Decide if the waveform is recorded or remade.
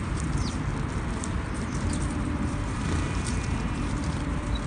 remade